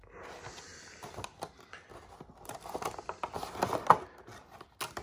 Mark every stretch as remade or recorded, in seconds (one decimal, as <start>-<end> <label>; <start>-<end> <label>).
0.0-5.0 recorded